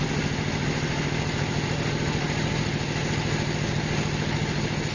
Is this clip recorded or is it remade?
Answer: recorded